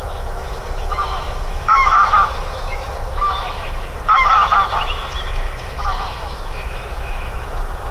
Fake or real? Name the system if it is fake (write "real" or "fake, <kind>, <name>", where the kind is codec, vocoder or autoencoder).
fake, autoencoder, DAC-VAE